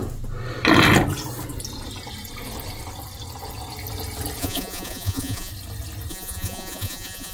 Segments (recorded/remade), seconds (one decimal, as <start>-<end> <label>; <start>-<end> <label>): 0.0-4.4 recorded; 4.4-5.5 remade; 5.5-6.1 recorded; 6.1-7.3 remade